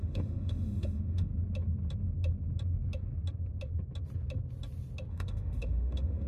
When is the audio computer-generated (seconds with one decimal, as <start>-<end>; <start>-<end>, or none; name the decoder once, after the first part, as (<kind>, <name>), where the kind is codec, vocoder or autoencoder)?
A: 0.0-1.3 (autoencoder, DAC-VAE); 5.1-6.3